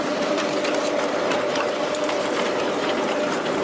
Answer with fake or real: fake